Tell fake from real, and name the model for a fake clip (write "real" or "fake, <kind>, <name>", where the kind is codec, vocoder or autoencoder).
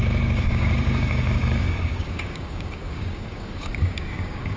fake, codec, DAC